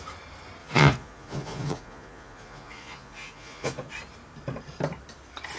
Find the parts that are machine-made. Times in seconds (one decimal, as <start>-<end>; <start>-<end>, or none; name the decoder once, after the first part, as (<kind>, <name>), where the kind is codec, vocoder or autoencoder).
0.6-3.9 (vocoder, Vocos)